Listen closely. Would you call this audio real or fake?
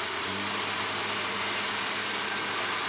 real